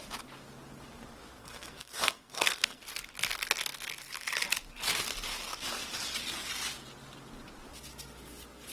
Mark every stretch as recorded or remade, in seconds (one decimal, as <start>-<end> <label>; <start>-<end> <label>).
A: 0.0-1.4 recorded; 1.4-2.8 remade; 2.8-8.7 recorded